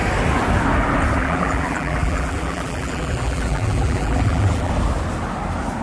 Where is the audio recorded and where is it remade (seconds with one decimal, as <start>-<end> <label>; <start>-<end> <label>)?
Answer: 0.0-1.2 recorded; 1.2-4.7 remade; 4.7-5.8 recorded